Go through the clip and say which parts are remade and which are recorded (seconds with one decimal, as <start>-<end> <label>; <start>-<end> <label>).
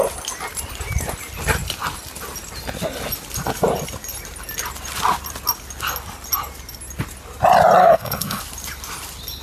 0.0-7.8 recorded; 7.8-8.4 remade; 8.4-9.4 recorded